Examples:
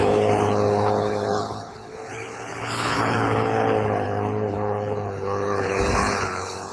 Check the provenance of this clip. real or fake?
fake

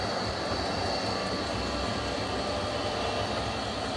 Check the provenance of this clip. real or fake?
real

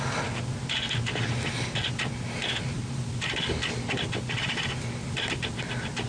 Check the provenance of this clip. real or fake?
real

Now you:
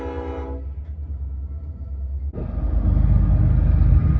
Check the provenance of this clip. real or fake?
real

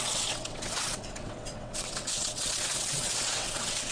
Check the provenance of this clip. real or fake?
fake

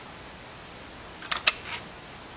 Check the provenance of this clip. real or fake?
real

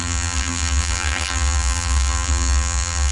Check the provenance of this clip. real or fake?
fake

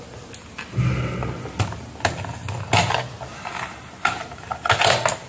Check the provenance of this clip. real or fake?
real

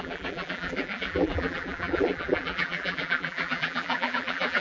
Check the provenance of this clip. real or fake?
fake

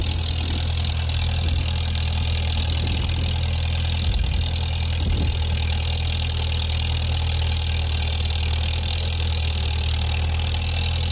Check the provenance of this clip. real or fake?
real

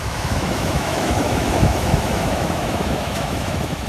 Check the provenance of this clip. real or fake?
fake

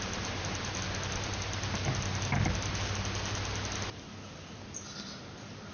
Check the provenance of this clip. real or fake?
real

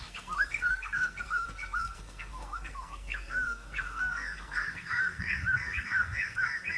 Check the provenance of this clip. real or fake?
fake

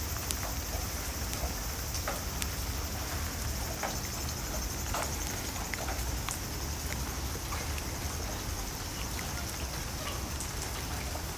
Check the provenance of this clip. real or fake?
real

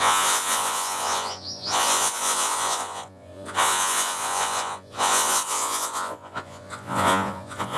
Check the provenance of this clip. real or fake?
fake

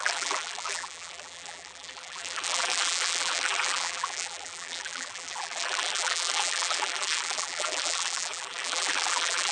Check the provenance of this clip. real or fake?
fake